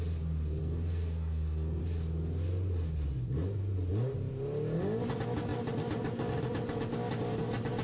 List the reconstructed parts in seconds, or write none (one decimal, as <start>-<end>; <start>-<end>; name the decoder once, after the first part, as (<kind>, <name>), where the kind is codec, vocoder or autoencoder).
0.6-1.8 (codec, SNAC)